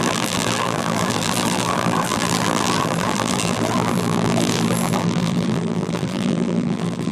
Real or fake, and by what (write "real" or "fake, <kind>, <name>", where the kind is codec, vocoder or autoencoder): fake, vocoder, BigVGAN v2